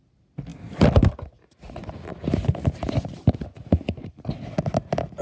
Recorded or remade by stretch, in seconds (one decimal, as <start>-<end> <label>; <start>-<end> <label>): 0.0-5.2 recorded